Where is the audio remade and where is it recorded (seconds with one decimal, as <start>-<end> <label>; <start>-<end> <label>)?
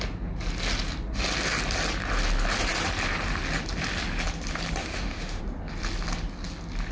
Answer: 0.0-4.8 recorded; 4.8-5.4 remade; 5.4-6.9 recorded